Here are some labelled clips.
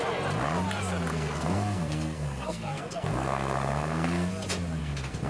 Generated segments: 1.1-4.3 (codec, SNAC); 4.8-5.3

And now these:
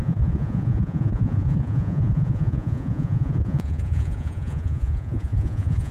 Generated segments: 0.0-5.9 (vocoder, Vocos)

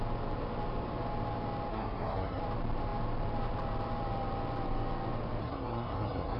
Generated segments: 1.7-2.4 (codec, SNAC); 5.4-6.4

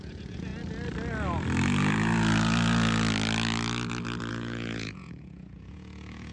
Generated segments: 0.0-0.5 (vocoder, Vocos); 4.3-6.3

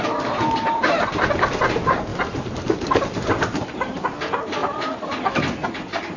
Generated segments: 2.1-3.0 (vocoder, BigVGAN v2); 4.6-5.3

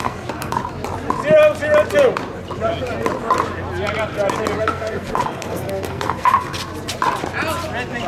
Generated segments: 0.0-0.6 (codec, SNAC); 4.6-6.6

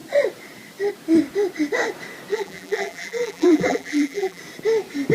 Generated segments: 2.3-4.4 (vocoder, BigVGAN v2)